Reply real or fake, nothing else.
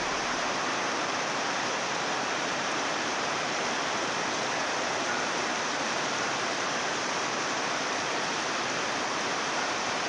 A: fake